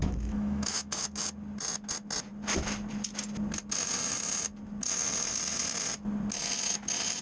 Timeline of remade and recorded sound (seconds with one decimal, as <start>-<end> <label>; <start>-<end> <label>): 0.0-1.0 remade; 1.0-7.2 recorded